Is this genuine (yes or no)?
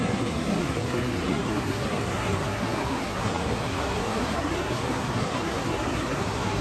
no